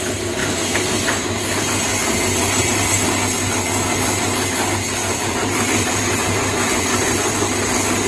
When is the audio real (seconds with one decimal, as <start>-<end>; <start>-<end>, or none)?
0.0-2.0; 2.9-5.0; 7.3-8.1